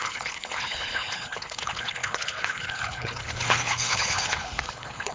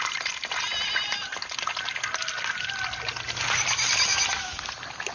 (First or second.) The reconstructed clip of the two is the first